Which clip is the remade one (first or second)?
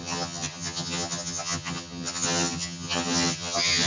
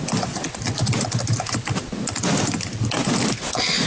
first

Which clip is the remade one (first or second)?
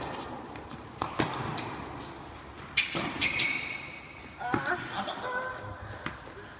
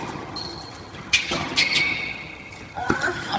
second